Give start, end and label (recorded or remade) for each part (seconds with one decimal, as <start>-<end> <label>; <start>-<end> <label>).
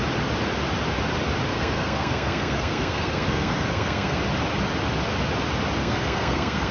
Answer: 0.0-1.5 recorded; 1.5-4.2 remade; 4.2-5.8 recorded; 5.8-6.7 remade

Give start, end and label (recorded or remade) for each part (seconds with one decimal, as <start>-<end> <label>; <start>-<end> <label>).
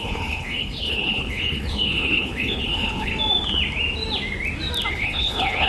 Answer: 0.0-3.1 remade; 3.1-4.9 recorded; 4.9-5.7 remade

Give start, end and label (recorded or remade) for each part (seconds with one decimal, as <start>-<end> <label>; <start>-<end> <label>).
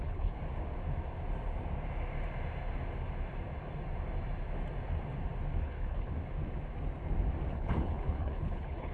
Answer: 0.0-0.4 remade; 0.4-5.6 recorded; 5.6-6.1 remade; 6.1-7.5 recorded; 7.5-8.9 remade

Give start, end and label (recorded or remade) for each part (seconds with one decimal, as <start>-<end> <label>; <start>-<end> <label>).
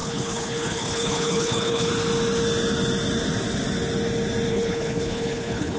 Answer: 0.0-1.9 remade; 1.9-4.5 recorded; 4.5-5.8 remade